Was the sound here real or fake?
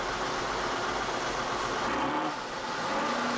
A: real